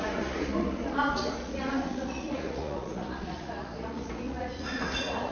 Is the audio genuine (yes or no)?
no